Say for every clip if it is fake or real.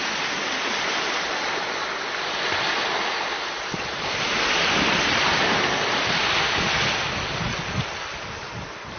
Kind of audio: real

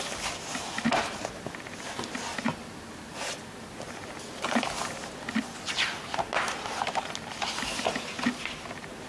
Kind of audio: real